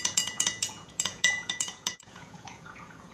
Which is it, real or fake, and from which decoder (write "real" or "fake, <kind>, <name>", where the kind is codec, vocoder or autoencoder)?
fake, vocoder, Vocos